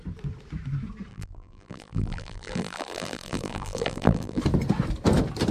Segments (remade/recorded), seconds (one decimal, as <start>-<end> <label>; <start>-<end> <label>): 0.0-1.1 recorded; 1.1-4.4 remade; 4.4-5.5 recorded